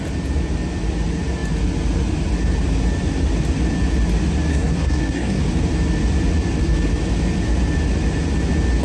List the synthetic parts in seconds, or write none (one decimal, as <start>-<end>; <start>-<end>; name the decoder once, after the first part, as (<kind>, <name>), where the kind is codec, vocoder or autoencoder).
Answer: 4.5-5.4 (codec, SNAC)